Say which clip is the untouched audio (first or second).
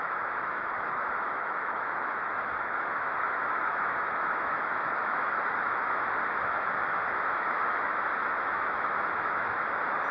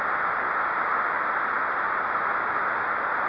second